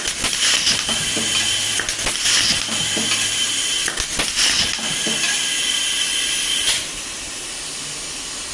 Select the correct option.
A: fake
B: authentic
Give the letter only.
B